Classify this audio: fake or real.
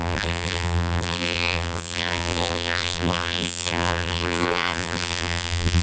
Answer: fake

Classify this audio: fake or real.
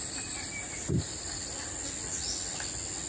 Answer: real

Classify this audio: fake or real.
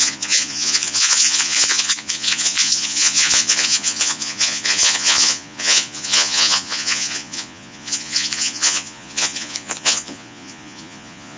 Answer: fake